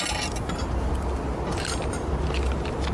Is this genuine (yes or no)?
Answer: yes